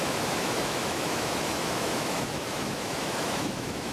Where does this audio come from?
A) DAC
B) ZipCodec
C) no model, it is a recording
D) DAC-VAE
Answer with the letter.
D